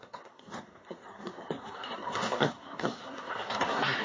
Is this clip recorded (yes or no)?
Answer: no